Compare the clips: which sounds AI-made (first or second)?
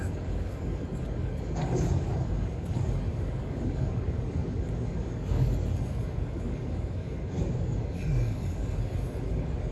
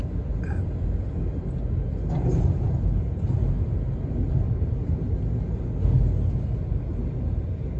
first